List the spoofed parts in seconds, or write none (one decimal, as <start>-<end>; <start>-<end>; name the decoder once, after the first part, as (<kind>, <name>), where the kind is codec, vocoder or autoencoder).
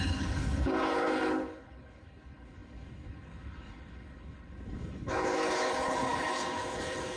0.0-7.2 (codec, HILCodec)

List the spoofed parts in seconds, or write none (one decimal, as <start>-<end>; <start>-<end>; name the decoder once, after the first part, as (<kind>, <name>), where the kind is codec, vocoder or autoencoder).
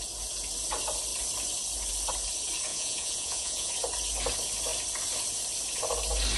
2.7-3.7 (vocoder, Vocos)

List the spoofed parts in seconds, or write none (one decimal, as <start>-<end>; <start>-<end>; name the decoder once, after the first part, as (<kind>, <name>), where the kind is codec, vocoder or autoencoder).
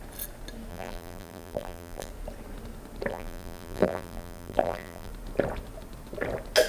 0.7-2.1 (vocoder, BigVGAN v2); 3.1-5.1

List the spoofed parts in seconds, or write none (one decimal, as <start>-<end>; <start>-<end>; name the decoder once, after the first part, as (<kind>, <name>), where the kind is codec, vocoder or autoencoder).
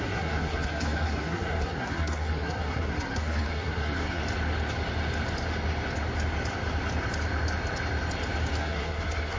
0.0-4.2 (codec, SNAC); 8.6-9.4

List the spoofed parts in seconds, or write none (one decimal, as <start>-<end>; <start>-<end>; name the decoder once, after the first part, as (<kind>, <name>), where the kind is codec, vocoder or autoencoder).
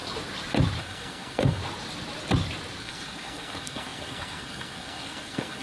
0.8-1.6 (codec, SNAC); 2.8-5.6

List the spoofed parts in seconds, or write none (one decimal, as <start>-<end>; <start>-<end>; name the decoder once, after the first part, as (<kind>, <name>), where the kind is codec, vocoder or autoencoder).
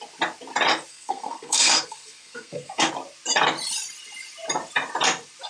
0.9-2.9 (codec, SNAC)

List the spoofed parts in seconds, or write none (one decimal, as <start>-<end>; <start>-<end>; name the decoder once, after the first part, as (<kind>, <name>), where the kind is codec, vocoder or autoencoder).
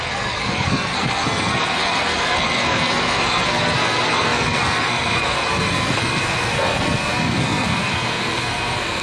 0.0-9.0 (codec, SNAC)